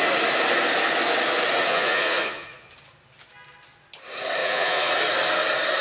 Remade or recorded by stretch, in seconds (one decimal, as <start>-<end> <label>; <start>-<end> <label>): 0.0-1.7 recorded; 1.7-2.7 remade; 2.7-4.4 recorded; 4.4-4.9 remade; 4.9-5.8 recorded